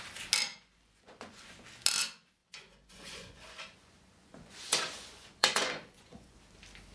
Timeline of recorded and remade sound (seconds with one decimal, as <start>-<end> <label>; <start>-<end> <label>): 0.0-0.5 recorded; 0.5-1.5 remade; 1.5-2.4 recorded; 2.4-6.4 remade; 6.4-6.9 recorded